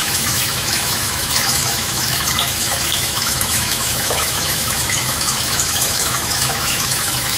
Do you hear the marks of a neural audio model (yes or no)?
yes